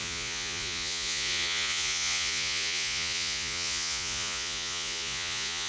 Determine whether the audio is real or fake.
fake